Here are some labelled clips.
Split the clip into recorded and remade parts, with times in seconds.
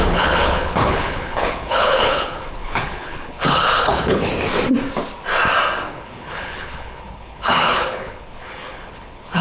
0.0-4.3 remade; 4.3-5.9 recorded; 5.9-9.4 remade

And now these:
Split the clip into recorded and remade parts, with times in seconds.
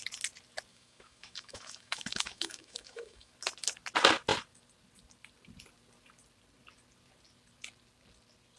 0.0-0.7 recorded; 0.7-3.3 remade; 3.3-8.6 recorded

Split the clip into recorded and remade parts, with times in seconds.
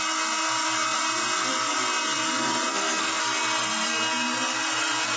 0.0-2.7 recorded; 2.7-3.2 remade; 3.2-5.2 recorded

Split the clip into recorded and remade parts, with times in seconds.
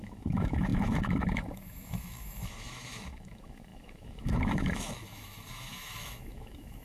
0.0-6.8 remade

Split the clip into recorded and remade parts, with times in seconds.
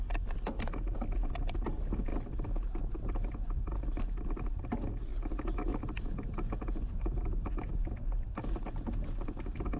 0.0-9.8 recorded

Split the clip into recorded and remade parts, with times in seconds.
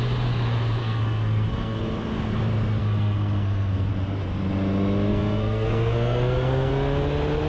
0.0-0.8 recorded; 0.8-1.8 remade; 1.8-2.8 recorded; 2.8-3.9 remade; 3.9-5.1 recorded; 5.1-6.7 remade; 6.7-7.5 recorded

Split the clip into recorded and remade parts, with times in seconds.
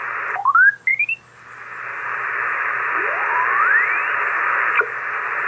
0.0-5.5 recorded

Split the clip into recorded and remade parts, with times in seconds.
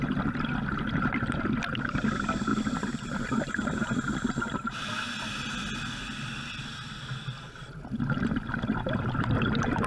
0.0-2.5 recorded; 2.5-4.3 remade; 4.3-9.9 recorded